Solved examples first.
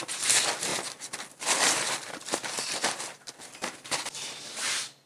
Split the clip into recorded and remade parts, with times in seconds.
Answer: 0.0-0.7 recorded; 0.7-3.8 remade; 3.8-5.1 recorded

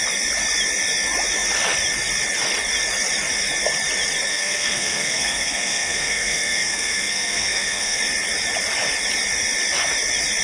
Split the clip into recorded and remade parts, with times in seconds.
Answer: 0.0-4.3 recorded; 4.3-8.0 remade; 8.0-10.4 recorded

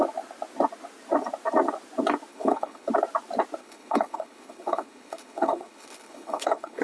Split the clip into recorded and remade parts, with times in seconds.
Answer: 0.0-2.3 recorded; 2.3-2.9 remade; 2.9-3.6 recorded; 3.6-6.8 remade

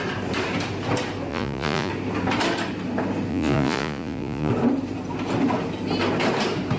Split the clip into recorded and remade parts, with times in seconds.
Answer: 0.0-1.3 recorded; 1.3-1.9 remade; 1.9-3.3 recorded; 3.3-4.5 remade; 4.5-6.8 recorded

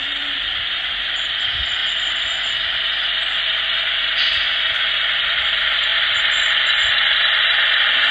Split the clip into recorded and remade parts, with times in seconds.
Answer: 0.0-8.1 recorded

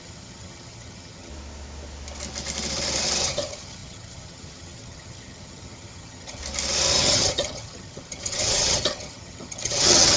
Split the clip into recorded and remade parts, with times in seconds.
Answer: 0.0-1.3 remade; 1.3-3.2 recorded; 3.2-6.4 remade; 6.4-7.0 recorded; 7.0-10.2 remade